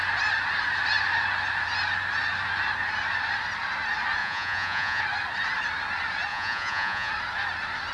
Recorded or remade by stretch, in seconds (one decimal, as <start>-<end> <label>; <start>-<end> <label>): 0.0-4.2 recorded; 4.2-5.0 remade; 5.0-6.3 recorded; 6.3-7.1 remade; 7.1-7.9 recorded